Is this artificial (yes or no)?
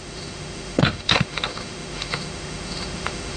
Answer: yes